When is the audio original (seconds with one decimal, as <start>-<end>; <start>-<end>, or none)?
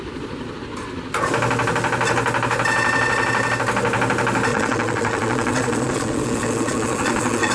0.0-4.5